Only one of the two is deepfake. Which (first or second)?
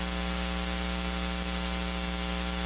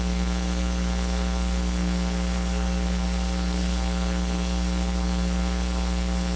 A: second